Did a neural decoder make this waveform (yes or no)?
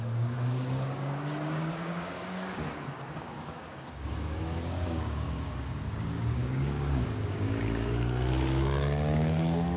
yes